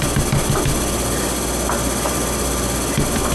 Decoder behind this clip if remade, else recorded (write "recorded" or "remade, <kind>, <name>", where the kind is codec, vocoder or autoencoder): recorded